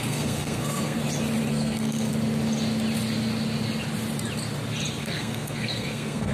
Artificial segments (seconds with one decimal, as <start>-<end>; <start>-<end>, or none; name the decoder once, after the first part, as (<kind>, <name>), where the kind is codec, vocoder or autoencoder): 0.0-1.0 (codec, SNAC); 1.5-2.1; 5.0-6.3